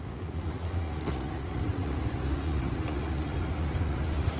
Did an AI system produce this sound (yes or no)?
yes